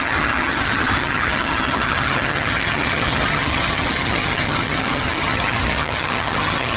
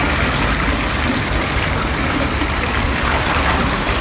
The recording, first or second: second